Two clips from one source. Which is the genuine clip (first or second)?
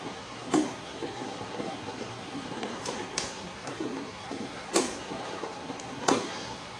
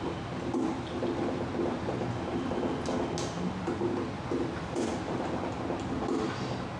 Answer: second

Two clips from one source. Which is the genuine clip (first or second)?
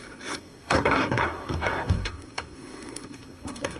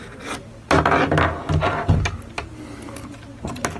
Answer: second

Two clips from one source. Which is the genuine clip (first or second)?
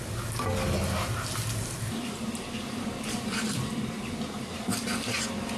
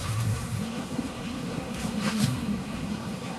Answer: first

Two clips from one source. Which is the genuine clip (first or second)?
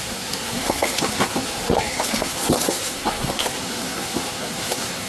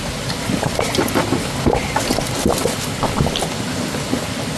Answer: second